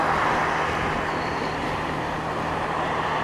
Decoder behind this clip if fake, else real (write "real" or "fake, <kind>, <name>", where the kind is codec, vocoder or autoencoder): real